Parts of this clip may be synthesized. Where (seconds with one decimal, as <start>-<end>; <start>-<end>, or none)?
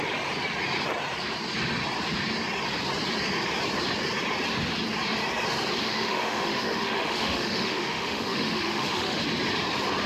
5.8-9.2